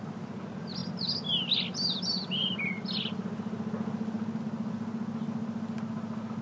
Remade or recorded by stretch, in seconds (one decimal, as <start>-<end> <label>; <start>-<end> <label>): 0.0-6.4 recorded